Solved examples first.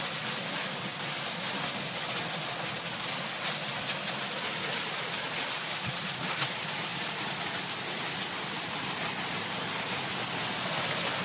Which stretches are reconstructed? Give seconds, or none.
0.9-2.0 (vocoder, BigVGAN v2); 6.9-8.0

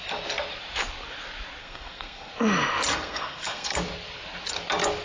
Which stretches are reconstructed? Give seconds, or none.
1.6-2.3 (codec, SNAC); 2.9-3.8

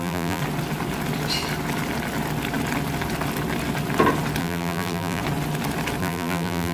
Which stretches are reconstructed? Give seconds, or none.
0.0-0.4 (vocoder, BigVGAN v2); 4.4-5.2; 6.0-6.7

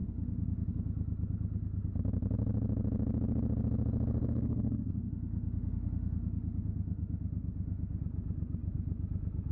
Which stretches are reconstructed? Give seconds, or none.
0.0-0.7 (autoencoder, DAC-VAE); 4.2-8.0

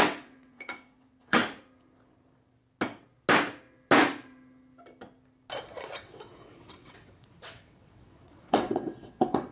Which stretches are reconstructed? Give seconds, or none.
0.0-1.4 (vocoder, WaveNeXt); 5.8-9.5